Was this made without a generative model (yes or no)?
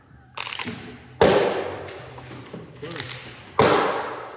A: yes